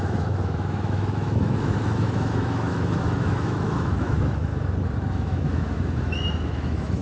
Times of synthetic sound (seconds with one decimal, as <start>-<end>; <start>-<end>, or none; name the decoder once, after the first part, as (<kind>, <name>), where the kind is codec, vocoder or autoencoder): 0.0-4.5 (autoencoder, DAC-VAE); 5.1-7.0